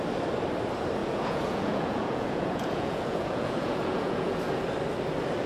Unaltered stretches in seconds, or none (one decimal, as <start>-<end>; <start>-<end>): 0.0-1.0; 4.3-5.5